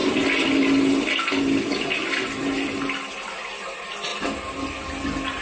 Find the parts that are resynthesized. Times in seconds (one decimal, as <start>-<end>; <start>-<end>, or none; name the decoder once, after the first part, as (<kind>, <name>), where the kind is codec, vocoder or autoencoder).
none